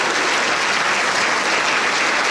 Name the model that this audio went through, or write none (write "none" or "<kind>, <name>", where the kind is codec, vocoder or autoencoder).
none